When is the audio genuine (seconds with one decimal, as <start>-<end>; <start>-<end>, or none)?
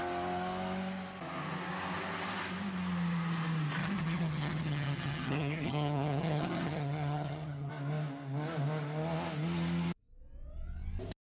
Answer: 0.0-3.8; 7.7-11.3